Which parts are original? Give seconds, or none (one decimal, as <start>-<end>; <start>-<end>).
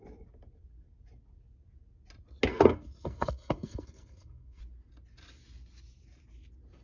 0.0-2.5; 4.6-6.8